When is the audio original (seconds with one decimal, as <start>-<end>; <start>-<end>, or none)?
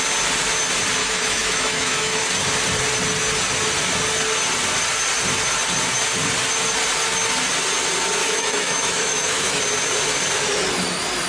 0.0-1.0; 2.2-8.2; 9.6-11.3